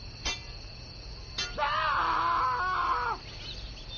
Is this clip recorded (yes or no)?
yes